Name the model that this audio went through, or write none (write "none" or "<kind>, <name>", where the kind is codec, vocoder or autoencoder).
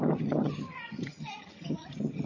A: vocoder, HiFi-GAN